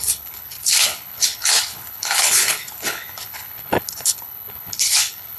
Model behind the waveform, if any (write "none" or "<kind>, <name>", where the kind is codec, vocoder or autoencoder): codec, HILCodec